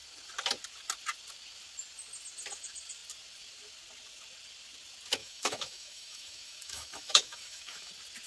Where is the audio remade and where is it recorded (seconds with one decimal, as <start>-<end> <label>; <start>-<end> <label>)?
0.0-5.2 recorded; 5.2-7.9 remade; 7.9-8.3 recorded